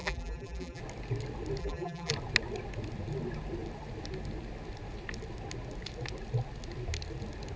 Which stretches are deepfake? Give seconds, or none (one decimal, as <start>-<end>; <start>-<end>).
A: 0.0-0.8; 1.6-2.1